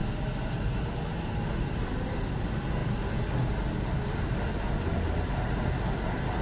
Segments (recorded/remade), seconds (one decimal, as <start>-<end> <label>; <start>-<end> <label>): 0.0-6.4 recorded